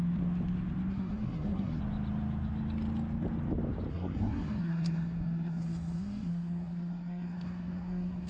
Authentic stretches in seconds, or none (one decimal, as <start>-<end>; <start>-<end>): 0.0-0.9; 1.8-3.9